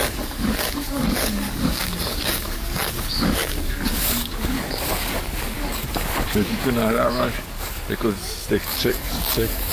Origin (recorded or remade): remade